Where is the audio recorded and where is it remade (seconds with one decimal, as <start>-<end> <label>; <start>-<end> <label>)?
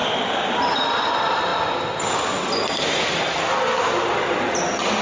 0.0-0.6 remade; 0.6-5.0 recorded